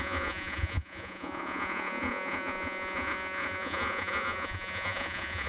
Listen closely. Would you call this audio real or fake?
fake